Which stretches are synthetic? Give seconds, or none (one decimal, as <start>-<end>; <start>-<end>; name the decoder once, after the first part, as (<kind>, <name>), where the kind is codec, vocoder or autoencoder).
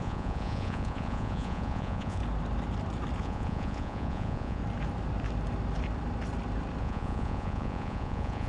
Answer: 0.0-2.2 (vocoder, Vocos); 3.2-4.6; 6.8-8.5